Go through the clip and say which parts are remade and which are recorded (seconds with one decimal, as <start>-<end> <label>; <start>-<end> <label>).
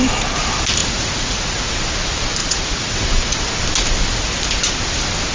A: 0.0-0.8 recorded; 0.8-1.7 remade; 1.7-2.4 recorded; 2.4-3.4 remade; 3.4-5.3 recorded